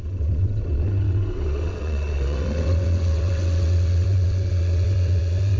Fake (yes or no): yes